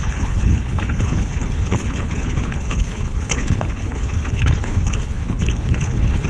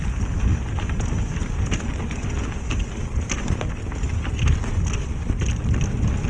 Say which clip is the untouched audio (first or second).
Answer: second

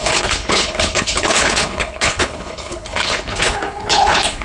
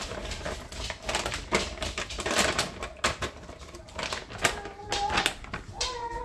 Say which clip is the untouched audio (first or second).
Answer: second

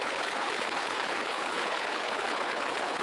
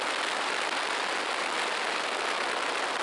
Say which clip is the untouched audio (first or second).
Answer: second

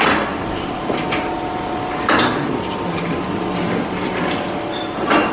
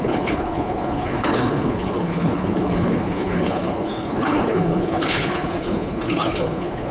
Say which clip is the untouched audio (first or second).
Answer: first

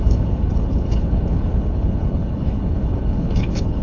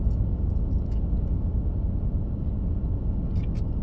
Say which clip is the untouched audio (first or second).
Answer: second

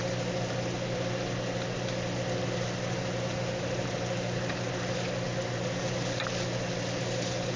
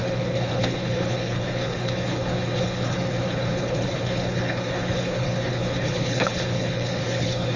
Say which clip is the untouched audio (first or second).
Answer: first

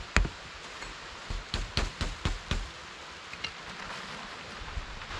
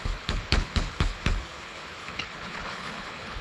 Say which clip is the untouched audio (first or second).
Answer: first